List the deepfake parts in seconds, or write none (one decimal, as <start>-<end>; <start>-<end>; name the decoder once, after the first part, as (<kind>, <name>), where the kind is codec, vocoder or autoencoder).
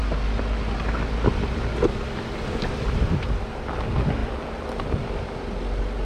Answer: 4.2-4.8 (vocoder, BigVGAN v2)